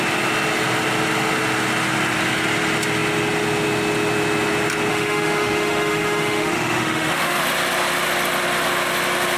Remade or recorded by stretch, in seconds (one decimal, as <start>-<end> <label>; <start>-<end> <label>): 0.0-4.9 recorded; 4.9-7.4 remade; 7.4-9.4 recorded